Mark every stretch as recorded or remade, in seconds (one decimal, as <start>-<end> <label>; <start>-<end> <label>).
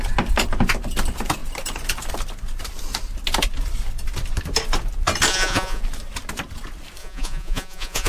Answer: 0.0-5.3 recorded; 5.3-5.8 remade; 5.8-7.0 recorded; 7.0-8.1 remade